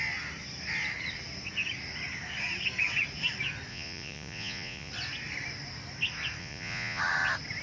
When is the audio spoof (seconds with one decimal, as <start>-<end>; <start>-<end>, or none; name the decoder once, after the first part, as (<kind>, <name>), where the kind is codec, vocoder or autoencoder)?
3.7-4.9 (vocoder, Vocos); 6.4-7.0

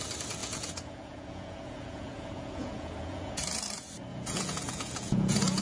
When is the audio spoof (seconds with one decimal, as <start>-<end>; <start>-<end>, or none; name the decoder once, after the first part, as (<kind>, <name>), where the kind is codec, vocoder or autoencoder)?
0.4-3.4 (vocoder, Vocos); 4.1-5.6

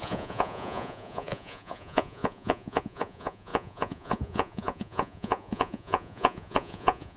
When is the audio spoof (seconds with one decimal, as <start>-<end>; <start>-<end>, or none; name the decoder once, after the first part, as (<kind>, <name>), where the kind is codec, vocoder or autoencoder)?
0.0-7.2 (vocoder, Vocos)

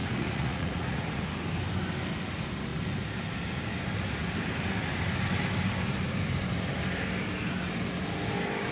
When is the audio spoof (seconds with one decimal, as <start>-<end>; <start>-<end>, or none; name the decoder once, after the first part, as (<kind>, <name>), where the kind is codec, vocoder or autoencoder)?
0.0-1.2 (vocoder, Vocos)